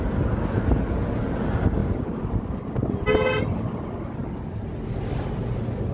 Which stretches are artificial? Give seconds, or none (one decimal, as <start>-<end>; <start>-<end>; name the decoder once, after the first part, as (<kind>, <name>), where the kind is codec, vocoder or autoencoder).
none